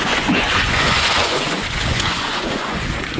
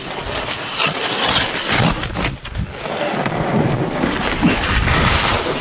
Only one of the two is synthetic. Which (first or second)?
first